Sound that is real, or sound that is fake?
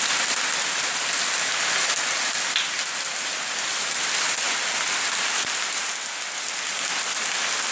real